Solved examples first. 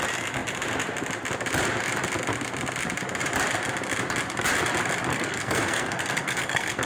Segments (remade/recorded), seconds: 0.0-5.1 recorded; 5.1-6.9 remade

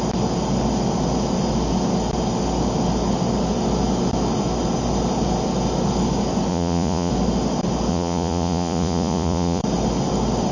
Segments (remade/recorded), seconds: 0.0-6.5 recorded; 6.5-7.1 remade; 7.1-7.9 recorded; 7.9-9.6 remade; 9.6-10.5 recorded

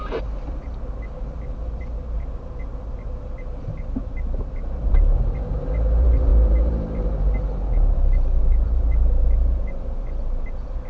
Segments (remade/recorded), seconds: 0.0-10.9 remade

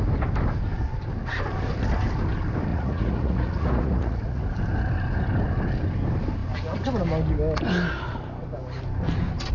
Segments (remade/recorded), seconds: 0.0-2.7 recorded; 2.7-4.4 remade; 4.4-9.5 recorded